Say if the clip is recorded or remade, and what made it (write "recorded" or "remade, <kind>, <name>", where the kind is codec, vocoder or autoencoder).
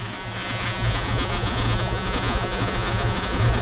remade, vocoder, Vocos